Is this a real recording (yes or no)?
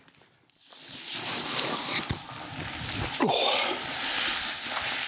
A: yes